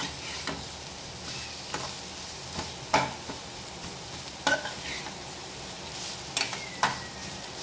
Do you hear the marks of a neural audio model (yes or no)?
no